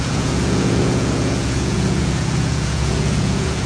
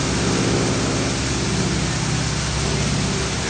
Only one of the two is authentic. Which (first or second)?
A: second